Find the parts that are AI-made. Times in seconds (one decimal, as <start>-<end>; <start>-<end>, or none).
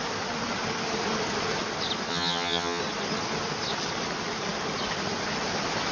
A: 2.1-2.8